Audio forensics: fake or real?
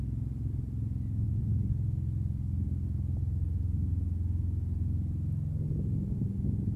real